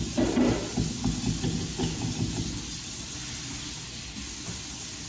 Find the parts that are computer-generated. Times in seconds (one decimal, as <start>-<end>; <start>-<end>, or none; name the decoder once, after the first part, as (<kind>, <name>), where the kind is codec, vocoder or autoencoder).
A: none